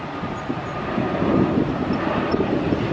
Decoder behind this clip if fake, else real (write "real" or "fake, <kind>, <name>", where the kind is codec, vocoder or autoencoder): real